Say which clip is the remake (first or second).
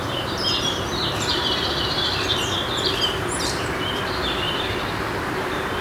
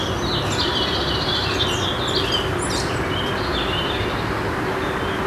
first